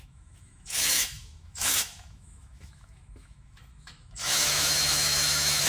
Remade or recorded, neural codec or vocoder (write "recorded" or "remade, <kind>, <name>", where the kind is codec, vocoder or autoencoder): remade, autoencoder, DAC-VAE